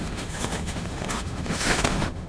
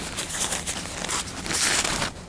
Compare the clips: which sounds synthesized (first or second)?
first